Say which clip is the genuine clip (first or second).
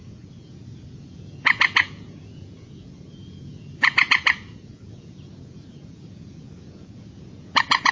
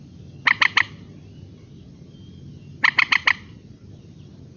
second